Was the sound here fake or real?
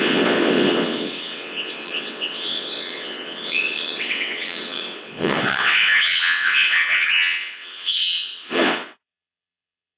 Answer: fake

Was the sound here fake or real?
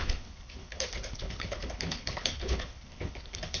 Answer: fake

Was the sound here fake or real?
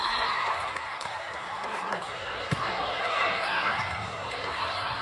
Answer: fake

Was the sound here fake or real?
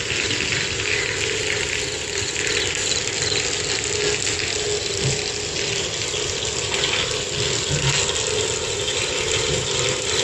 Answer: real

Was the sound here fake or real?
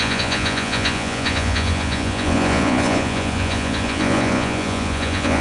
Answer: fake